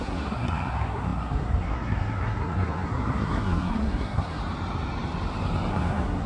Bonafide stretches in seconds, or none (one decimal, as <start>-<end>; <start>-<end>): 4.4-5.7